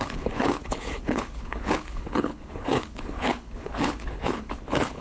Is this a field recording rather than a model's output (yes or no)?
no